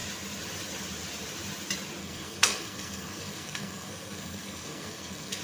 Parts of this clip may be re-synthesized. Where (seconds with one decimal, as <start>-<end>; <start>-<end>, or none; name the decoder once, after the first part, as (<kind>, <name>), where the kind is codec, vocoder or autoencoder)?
2.0-5.4 (codec, SNAC)

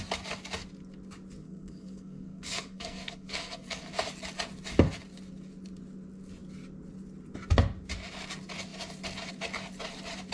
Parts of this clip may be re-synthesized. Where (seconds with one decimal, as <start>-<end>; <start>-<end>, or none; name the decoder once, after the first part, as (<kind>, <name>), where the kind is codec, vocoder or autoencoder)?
1.4-3.8 (codec, SNAC)

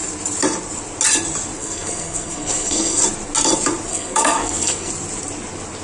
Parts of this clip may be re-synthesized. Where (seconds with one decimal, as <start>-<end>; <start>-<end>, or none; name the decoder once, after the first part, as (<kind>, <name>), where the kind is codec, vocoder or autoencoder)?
1.6-3.0 (codec, SNAC); 3.9-4.9

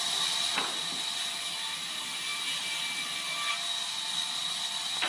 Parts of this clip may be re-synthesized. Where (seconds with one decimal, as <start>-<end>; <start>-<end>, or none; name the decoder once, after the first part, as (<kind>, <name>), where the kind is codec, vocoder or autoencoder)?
none

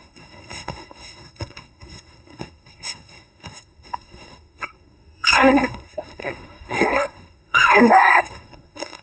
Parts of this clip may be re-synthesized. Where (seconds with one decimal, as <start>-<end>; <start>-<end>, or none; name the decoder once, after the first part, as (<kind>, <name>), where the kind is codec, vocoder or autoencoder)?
0.0-9.0 (codec, SNAC)

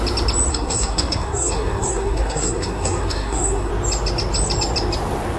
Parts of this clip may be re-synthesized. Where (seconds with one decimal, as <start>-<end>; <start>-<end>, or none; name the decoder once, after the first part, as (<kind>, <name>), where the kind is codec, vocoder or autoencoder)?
0.5-3.7 (codec, SNAC)